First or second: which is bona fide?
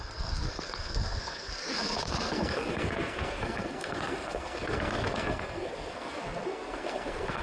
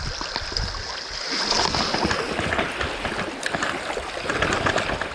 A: second